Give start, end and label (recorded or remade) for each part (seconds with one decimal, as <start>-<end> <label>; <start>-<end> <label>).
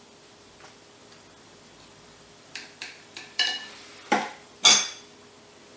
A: 0.0-1.0 recorded; 1.0-4.5 remade; 4.5-5.8 recorded